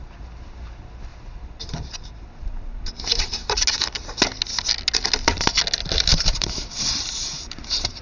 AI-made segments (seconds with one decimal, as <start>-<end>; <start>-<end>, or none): 1.1-2.9; 6.1-8.0